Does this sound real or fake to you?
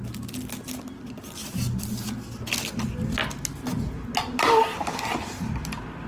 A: real